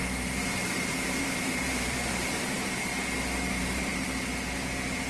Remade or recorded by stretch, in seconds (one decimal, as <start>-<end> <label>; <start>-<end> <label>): 0.0-2.9 remade; 2.9-3.5 recorded; 3.5-3.9 remade; 3.9-5.1 recorded